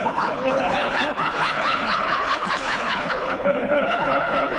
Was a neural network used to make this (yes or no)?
yes